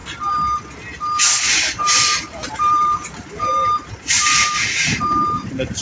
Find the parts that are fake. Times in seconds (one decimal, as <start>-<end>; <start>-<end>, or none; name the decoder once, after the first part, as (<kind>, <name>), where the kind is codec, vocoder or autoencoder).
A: 1.4-5.8 (vocoder, BigVGAN v2)